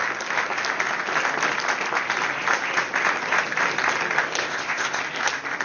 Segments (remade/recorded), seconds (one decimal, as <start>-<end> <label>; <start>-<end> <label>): 0.0-4.4 recorded; 4.4-5.0 remade; 5.0-5.6 recorded